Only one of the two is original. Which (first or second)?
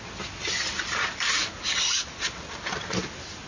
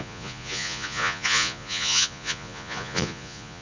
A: first